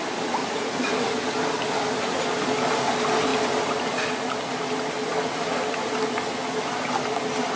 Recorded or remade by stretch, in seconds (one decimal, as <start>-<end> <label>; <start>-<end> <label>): 0.0-0.4 recorded; 0.4-0.9 remade; 0.9-7.6 recorded